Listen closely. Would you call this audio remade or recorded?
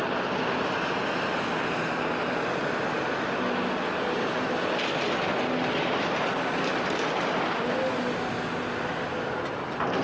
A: recorded